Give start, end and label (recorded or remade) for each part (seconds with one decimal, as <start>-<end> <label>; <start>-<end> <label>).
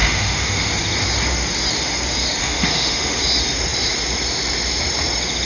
0.0-0.7 remade; 0.7-2.4 recorded; 2.4-3.2 remade; 3.2-5.5 recorded